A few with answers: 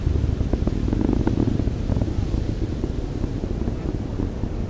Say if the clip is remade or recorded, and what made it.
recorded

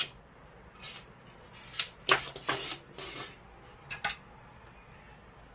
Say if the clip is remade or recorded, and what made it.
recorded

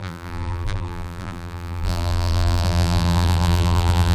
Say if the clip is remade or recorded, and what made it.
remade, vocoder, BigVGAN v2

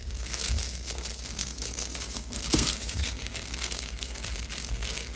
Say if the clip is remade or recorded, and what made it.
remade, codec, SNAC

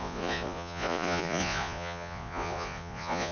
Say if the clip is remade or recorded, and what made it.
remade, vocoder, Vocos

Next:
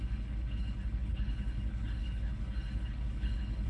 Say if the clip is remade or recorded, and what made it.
remade, codec, HILCodec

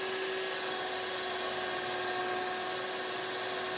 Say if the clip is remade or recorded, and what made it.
recorded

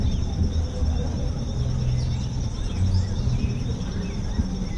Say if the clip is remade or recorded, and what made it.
recorded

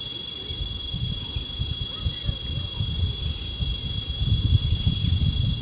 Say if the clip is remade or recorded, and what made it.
recorded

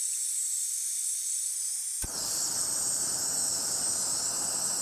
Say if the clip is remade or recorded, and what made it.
recorded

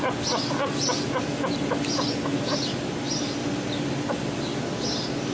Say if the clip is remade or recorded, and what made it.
recorded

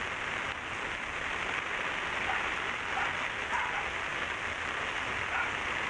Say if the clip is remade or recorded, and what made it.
recorded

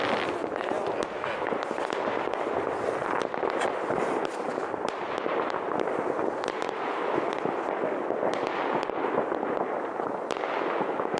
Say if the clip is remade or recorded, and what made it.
recorded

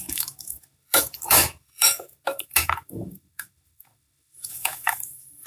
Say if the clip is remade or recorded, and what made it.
remade, autoencoder, DAC-VAE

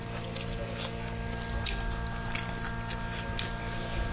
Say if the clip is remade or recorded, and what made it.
recorded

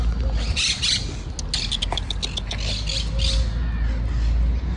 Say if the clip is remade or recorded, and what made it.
recorded